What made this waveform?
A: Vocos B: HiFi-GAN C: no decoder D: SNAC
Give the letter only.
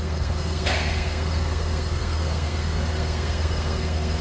D